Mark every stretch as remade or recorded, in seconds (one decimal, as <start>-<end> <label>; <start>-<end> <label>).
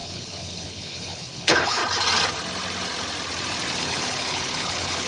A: 0.0-1.8 remade; 1.8-3.8 recorded; 3.8-5.1 remade